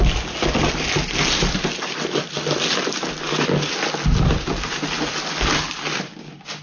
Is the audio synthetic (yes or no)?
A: no